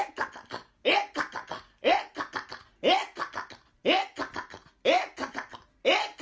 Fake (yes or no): no